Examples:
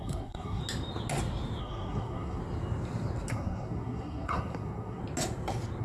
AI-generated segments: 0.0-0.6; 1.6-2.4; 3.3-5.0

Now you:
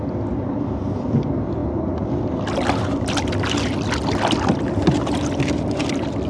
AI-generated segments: none

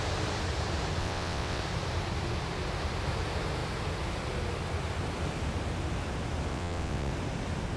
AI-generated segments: 1.0-1.6; 6.5-7.1

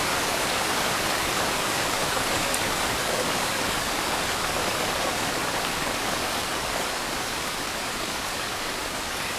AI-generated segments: 0.0-9.4

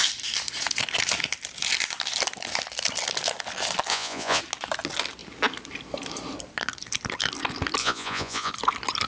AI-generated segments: 3.9-4.4; 7.8-8.5